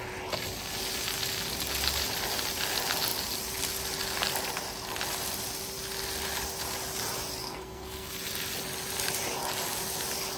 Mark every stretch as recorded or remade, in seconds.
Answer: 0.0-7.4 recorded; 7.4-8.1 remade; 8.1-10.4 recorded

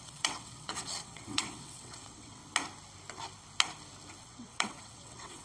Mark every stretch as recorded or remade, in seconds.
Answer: 0.0-2.4 remade; 2.4-4.2 recorded; 4.2-5.4 remade

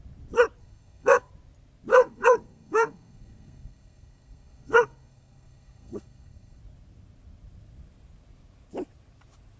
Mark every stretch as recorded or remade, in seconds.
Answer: 0.0-0.6 recorded; 0.6-1.3 remade; 1.3-1.9 recorded; 1.9-6.6 remade; 6.6-9.6 recorded